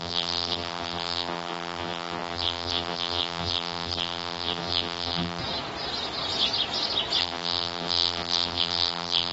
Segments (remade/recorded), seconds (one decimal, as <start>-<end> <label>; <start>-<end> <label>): 0.0-5.4 remade; 5.4-7.2 recorded; 7.2-9.3 remade